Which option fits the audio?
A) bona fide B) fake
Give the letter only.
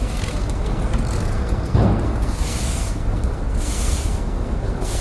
B